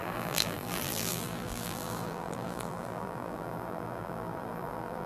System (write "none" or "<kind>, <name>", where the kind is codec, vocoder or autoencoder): vocoder, BigVGAN v2